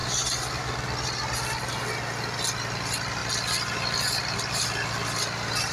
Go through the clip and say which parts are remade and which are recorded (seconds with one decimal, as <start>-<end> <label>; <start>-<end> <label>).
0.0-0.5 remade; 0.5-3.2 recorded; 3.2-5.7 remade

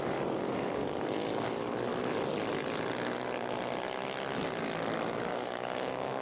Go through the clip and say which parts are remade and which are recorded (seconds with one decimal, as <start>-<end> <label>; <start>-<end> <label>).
0.0-1.6 remade; 1.6-5.3 recorded; 5.3-6.2 remade

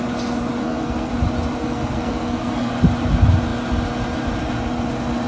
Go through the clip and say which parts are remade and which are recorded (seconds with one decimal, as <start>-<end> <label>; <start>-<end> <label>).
0.0-0.6 recorded; 0.6-1.1 remade; 1.1-1.6 recorded; 1.6-2.7 remade; 2.7-5.3 recorded